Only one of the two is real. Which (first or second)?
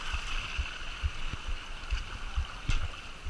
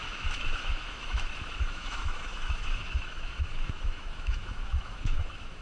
first